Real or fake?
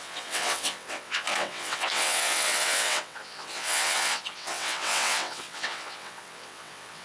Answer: fake